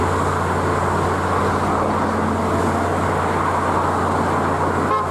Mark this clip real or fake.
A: real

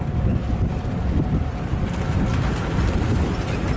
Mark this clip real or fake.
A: real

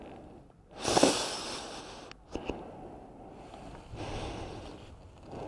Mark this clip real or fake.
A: real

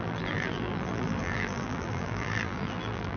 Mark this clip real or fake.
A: fake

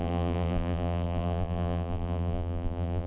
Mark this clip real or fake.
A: fake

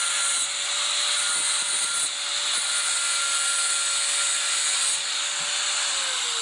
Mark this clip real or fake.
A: real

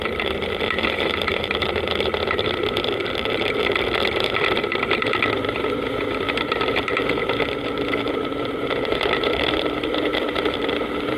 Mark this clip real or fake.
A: fake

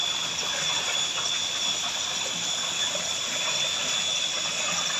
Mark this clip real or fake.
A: real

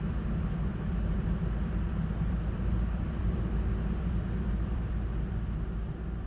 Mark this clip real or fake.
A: fake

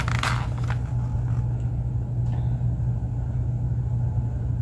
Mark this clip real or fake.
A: real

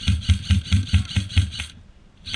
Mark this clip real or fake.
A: real